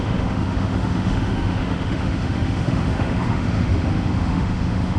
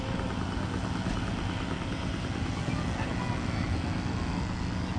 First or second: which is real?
second